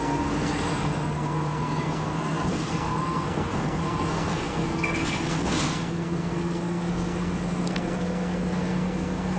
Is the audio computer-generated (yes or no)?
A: yes